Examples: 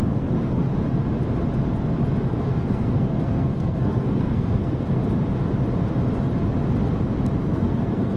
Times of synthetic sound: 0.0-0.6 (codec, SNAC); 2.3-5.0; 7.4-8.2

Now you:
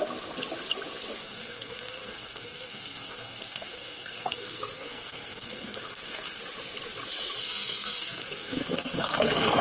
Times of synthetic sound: 1.2-6.4 (codec, SNAC); 7.4-9.6

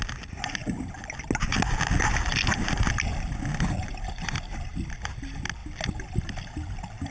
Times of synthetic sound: none

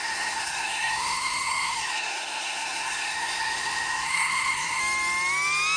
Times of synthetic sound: 0.0-4.8 (codec, SNAC)

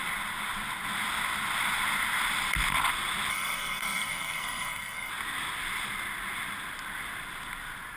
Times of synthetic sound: 3.3-5.1 (codec, SNAC)

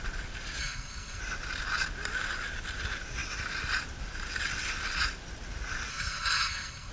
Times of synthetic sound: 0.6-1.2 (codec, SNAC); 5.9-6.9

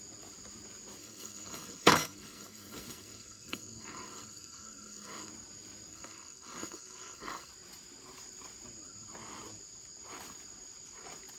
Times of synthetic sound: 1.0-5.3 (codec, SNAC); 5.9-7.5

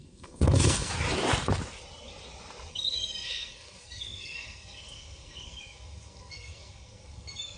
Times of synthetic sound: 0.0-0.9 (codec, SNAC); 2.7-7.6